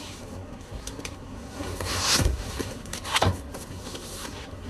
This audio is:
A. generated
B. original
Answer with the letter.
A